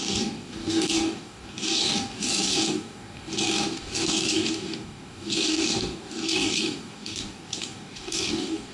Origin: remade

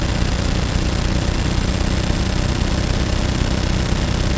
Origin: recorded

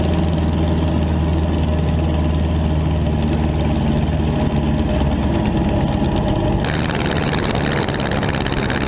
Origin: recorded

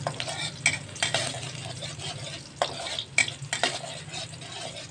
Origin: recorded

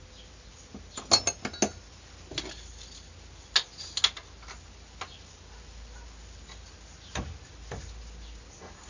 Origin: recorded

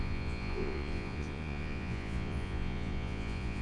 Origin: remade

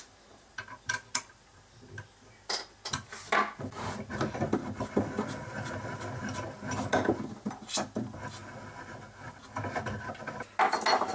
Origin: recorded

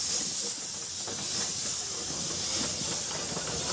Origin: recorded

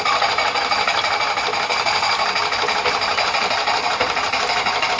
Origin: recorded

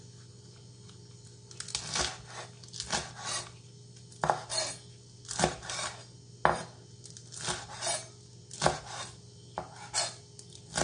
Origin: recorded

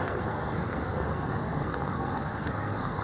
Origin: remade